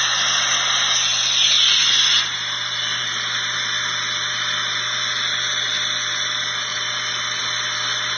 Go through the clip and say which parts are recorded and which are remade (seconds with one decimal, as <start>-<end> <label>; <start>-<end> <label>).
0.0-8.2 recorded